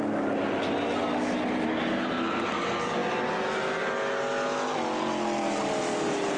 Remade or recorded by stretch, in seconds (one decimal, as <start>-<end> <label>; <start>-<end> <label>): 0.0-6.4 recorded